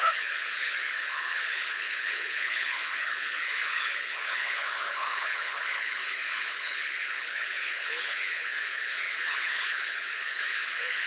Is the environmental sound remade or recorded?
remade